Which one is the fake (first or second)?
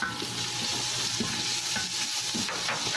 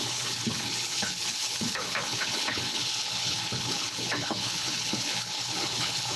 second